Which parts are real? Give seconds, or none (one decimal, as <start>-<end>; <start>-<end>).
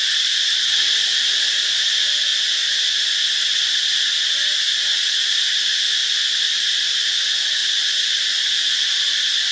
0.0-2.3; 2.9-6.0; 7.0-7.6; 8.4-9.5